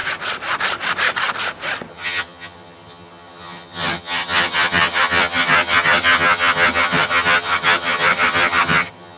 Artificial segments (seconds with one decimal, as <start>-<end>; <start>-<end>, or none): 1.9-9.2